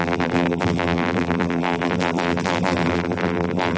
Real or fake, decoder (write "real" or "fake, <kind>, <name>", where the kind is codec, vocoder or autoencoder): fake, vocoder, BigVGAN v2